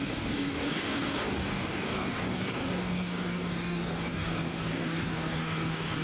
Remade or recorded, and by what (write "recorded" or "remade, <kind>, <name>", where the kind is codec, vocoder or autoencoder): remade, codec, DAC